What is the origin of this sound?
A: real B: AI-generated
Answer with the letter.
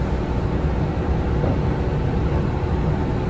A